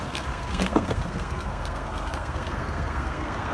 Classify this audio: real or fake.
fake